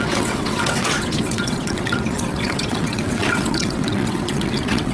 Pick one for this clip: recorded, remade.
remade